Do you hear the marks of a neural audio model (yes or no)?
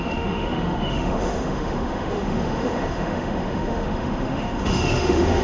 yes